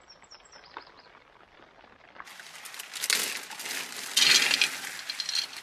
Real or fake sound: real